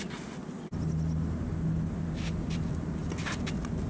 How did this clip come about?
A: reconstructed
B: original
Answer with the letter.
B